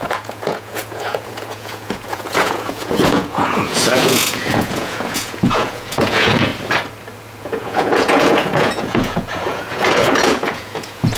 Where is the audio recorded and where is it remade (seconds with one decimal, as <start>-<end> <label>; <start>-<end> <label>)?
0.0-6.5 remade; 6.5-7.4 recorded; 7.4-11.2 remade